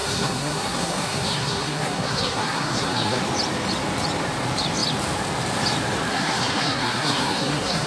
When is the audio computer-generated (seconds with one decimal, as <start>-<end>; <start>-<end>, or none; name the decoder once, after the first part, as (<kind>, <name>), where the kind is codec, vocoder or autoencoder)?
0.0-3.2 (codec, SNAC); 6.1-7.9